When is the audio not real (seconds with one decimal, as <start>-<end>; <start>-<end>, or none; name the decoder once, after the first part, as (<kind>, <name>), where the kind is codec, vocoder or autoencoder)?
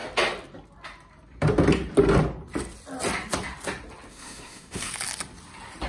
4.1-4.9 (autoencoder, DAC-VAE)